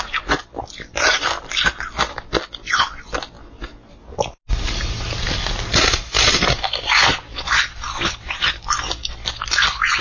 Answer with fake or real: real